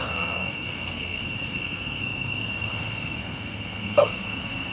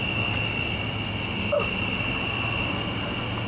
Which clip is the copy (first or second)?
first